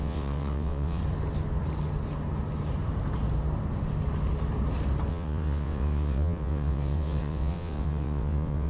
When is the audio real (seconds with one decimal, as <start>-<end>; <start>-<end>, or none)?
1.0-5.1